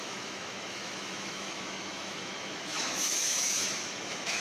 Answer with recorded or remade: remade